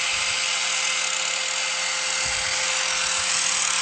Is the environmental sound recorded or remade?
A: recorded